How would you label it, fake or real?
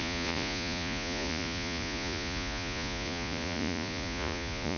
fake